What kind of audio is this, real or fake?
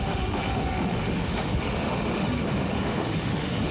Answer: fake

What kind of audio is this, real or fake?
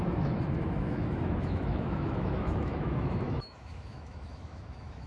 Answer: fake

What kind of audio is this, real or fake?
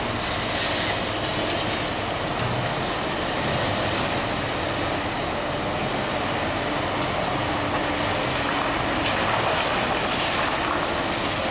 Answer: real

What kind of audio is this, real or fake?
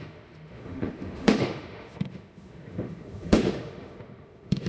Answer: fake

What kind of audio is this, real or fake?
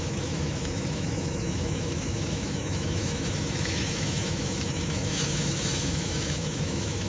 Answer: fake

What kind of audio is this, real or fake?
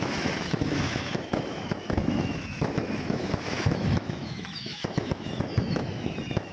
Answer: fake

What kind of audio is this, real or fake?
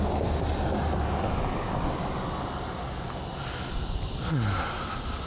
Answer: real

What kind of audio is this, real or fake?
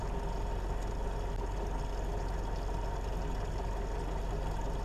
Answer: real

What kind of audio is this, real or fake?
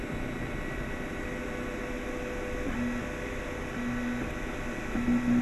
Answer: real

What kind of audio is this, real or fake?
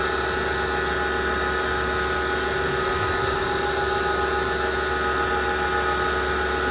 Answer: real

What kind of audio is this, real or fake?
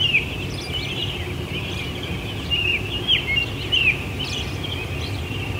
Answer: real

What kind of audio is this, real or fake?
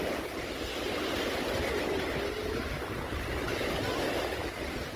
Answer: real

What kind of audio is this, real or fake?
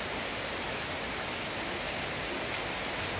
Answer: real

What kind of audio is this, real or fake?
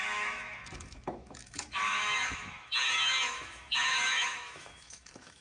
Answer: fake